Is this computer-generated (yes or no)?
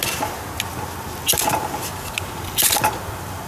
no